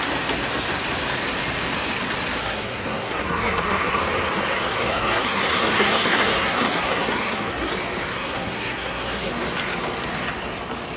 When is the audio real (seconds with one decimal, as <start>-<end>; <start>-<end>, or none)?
0.0-2.4; 4.0-4.7; 7.7-8.1; 9.3-11.0

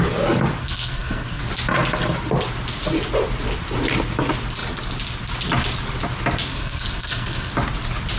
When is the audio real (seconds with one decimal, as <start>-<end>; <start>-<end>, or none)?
0.0-0.6; 1.4-6.5; 7.5-8.2